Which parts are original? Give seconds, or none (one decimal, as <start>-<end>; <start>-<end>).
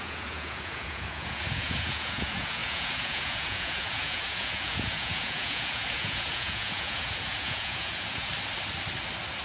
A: 8.3-9.4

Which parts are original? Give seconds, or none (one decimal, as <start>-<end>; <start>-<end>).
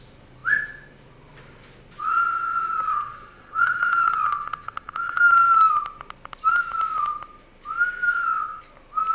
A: 0.0-2.0; 5.2-8.1; 8.6-9.1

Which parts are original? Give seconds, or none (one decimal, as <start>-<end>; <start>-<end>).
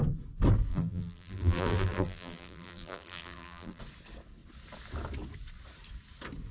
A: 0.0-0.7; 3.8-6.5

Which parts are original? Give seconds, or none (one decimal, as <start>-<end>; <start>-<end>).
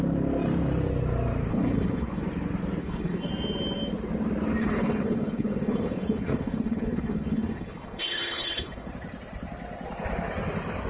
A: 0.0-1.5; 2.2-2.8; 3.3-4.6; 8.9-10.9